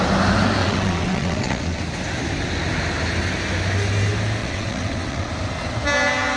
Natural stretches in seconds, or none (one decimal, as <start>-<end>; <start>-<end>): 0.0-0.6; 1.8-4.4; 5.3-6.4